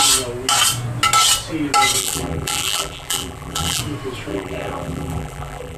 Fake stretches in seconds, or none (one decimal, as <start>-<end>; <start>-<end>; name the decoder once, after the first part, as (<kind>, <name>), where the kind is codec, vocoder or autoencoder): 2.0-3.8 (vocoder, BigVGAN v2); 4.3-5.8